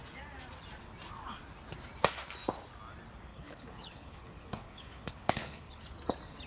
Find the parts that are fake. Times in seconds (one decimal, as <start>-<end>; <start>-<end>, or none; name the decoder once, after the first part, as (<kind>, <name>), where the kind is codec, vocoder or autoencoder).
3.3-5.8 (codec, HILCodec)